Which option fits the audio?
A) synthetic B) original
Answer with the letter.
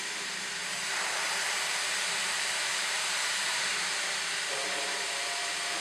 A